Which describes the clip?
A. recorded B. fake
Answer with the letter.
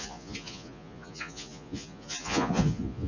B